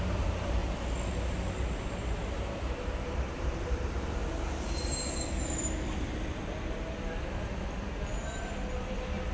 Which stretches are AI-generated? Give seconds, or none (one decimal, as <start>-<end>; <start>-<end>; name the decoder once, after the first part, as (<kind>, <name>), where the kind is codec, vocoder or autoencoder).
0.0-0.6 (vocoder, BigVGAN v2); 1.9-4.2; 8.8-9.3